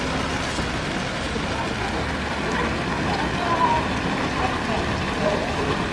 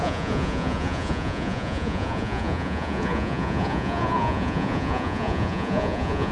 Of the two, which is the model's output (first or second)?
second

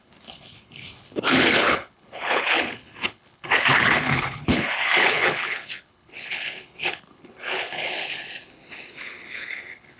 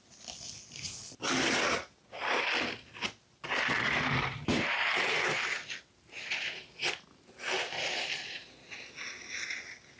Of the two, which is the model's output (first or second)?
first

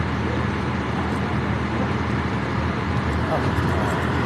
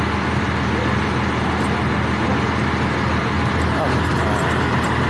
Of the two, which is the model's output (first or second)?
first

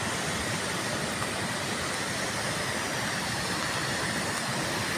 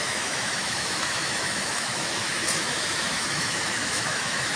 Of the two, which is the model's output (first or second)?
second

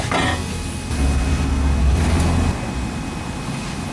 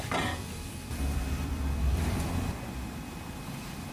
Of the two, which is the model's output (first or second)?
second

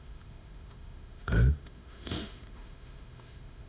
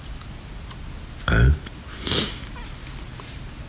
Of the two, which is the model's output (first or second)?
first